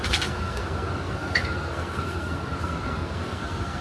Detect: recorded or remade remade